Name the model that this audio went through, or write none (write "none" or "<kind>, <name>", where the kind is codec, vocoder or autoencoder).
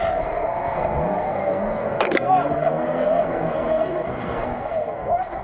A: codec, SNAC